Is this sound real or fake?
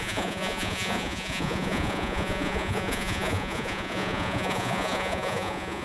fake